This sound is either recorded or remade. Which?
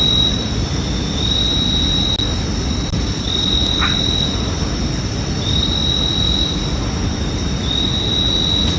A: recorded